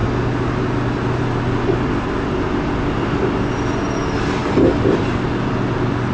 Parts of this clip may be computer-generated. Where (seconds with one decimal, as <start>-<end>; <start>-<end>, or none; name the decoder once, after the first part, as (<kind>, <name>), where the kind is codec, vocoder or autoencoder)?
none